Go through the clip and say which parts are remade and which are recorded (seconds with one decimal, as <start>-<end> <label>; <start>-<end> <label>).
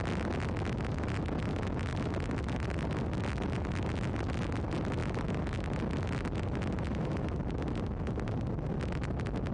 0.0-9.5 recorded